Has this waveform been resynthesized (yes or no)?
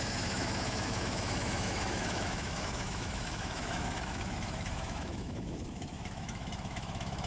yes